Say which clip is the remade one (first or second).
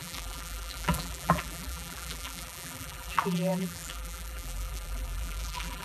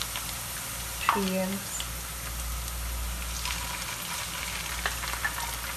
first